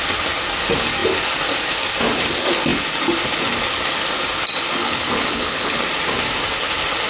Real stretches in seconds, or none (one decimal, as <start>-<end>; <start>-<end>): 0.0-4.8; 5.8-7.1